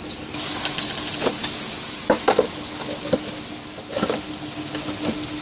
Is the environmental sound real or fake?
real